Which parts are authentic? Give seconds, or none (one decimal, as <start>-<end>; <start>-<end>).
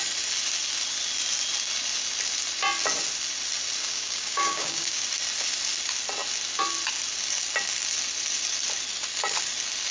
0.0-3.8; 5.0-9.9